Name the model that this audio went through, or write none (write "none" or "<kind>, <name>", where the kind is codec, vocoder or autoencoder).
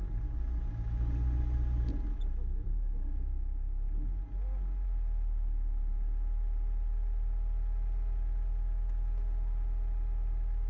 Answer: none